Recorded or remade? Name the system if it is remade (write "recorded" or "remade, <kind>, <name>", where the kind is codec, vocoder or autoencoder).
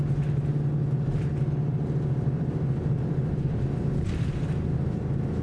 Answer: recorded